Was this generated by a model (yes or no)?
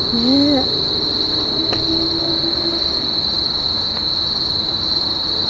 no